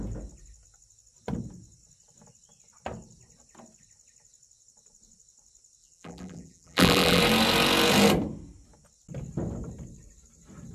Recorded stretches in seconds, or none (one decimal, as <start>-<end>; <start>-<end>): 0.0-5.8; 7.2-10.7